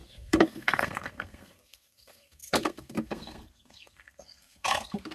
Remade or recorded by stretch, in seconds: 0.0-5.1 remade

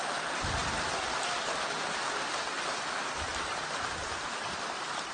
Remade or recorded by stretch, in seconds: 0.0-5.1 recorded